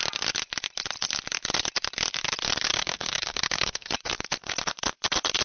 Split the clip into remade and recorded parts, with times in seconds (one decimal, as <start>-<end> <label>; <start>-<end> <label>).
0.0-2.7 recorded; 2.7-3.9 remade; 3.9-5.4 recorded